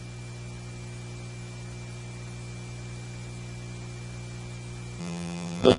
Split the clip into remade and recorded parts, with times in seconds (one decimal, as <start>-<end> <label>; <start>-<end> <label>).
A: 0.0-5.0 recorded; 5.0-5.8 remade